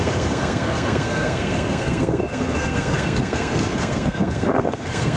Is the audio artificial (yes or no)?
yes